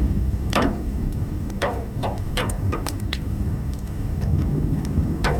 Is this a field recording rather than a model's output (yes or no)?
no